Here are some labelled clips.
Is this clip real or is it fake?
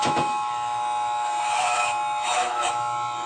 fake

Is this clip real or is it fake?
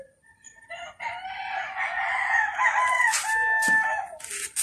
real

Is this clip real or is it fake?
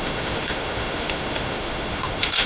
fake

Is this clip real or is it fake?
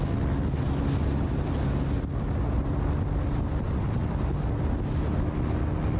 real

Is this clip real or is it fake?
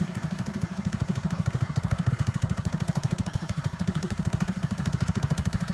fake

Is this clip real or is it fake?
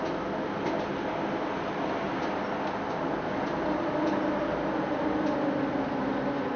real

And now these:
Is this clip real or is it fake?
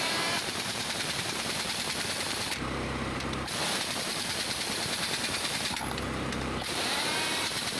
fake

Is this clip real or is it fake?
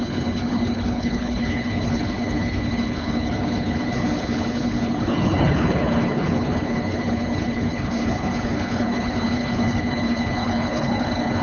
fake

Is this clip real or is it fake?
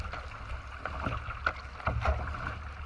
real